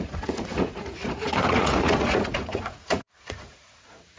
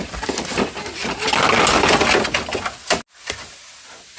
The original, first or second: second